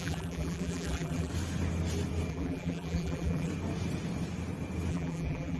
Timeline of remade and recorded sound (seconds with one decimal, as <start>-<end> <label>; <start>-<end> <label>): 0.0-1.3 remade; 1.3-2.3 recorded; 2.3-3.5 remade; 3.5-4.9 recorded; 4.9-5.6 remade